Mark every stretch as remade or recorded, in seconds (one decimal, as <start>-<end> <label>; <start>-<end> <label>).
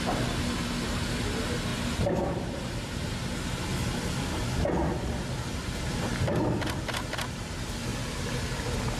0.0-3.7 recorded; 3.7-4.4 remade; 4.4-9.0 recorded